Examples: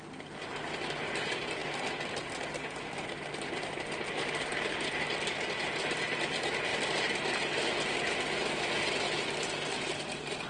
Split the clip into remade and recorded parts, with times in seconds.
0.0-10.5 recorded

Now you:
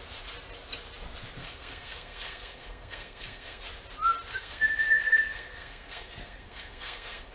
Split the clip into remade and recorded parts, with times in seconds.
0.0-1.4 recorded; 1.4-3.6 remade; 3.6-4.3 recorded; 4.3-7.3 remade